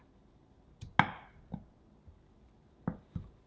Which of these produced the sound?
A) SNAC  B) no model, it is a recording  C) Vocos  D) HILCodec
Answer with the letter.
B